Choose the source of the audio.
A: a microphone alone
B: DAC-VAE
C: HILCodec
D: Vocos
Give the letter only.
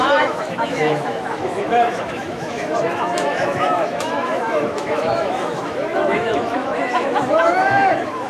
B